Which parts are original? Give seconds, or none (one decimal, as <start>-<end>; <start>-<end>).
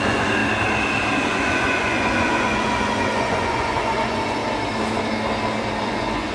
0.4-1.2; 4.4-5.8